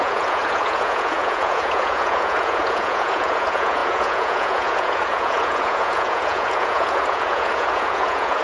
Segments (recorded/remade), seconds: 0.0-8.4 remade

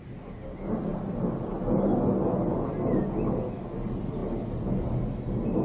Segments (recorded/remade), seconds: 0.0-5.6 recorded

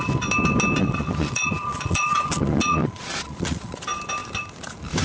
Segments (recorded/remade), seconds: 0.0-0.8 recorded; 0.8-3.8 remade; 3.8-5.0 recorded